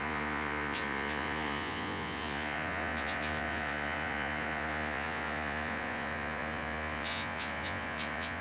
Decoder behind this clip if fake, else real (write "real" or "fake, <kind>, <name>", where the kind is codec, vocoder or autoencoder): fake, vocoder, Vocos